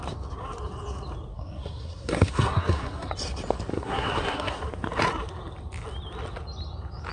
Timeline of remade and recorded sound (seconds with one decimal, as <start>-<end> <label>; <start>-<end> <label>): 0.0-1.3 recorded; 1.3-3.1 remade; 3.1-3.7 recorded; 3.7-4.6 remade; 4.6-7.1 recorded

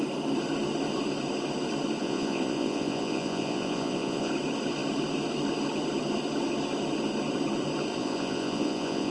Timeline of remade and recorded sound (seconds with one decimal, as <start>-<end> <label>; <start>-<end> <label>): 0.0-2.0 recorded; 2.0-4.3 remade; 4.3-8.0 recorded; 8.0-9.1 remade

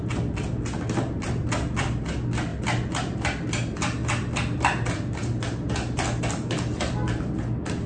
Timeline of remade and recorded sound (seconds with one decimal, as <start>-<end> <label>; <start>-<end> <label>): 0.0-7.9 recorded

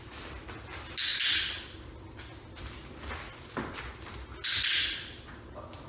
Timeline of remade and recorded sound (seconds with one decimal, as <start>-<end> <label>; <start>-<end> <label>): 0.0-5.9 recorded

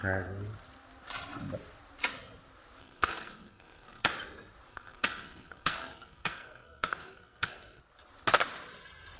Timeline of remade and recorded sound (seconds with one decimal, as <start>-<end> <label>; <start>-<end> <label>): 0.0-2.8 recorded; 2.8-4.1 remade; 4.1-4.7 recorded; 4.7-7.8 remade; 7.8-9.2 recorded

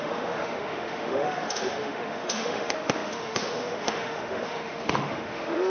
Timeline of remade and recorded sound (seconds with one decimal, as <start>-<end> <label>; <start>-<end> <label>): 0.0-5.7 remade